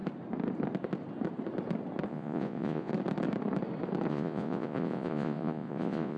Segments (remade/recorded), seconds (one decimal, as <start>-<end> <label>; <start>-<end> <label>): 0.0-2.1 recorded; 2.1-2.9 remade; 2.9-4.1 recorded; 4.1-6.2 remade